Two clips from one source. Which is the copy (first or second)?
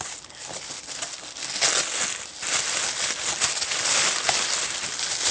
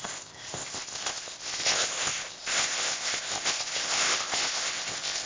second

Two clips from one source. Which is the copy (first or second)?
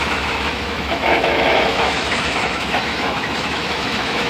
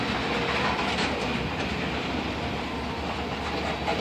first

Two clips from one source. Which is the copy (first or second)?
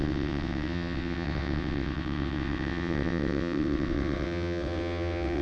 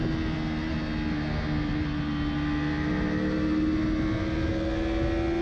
first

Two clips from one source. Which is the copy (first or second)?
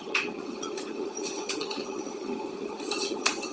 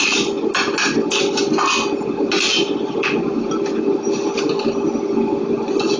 first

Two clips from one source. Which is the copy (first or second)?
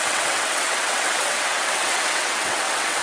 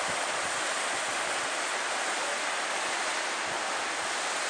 first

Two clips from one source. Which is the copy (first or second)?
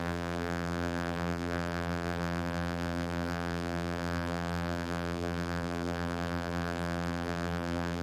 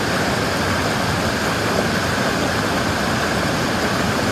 first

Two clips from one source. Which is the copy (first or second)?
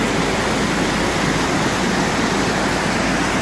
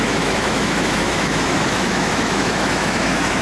second